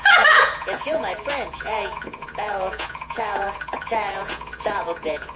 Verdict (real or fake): fake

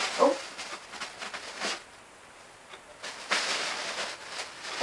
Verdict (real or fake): real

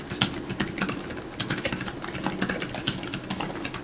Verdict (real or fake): real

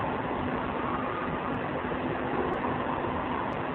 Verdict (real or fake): real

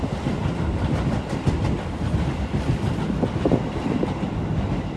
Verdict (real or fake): real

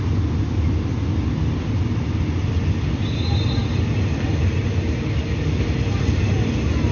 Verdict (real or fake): real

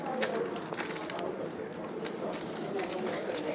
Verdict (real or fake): real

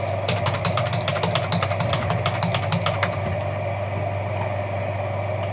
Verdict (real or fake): real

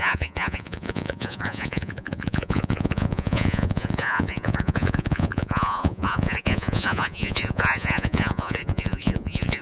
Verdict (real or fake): fake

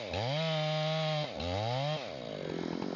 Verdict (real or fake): real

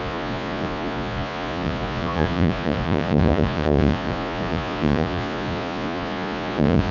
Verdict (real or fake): fake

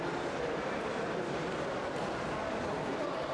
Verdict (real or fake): real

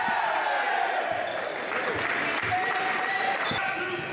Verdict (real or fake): real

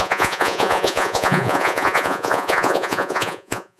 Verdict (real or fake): fake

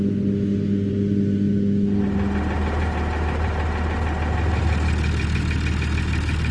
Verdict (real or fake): real